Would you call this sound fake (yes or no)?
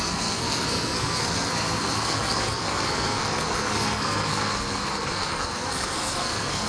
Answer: yes